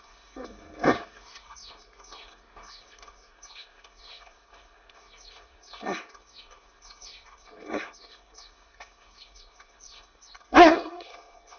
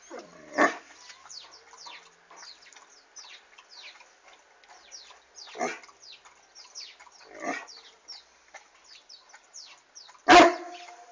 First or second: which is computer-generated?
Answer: first